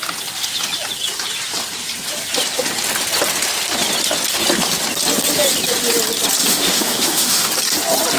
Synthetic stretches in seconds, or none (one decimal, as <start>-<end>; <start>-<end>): 6.4-7.5